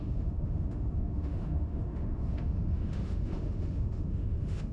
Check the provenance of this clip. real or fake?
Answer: fake